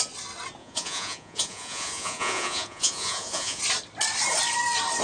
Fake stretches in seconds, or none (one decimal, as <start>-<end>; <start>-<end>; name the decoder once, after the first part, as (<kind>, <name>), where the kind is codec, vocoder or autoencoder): 0.6-3.6 (vocoder, Vocos)